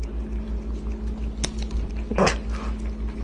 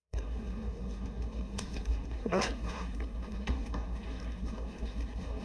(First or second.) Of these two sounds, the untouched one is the first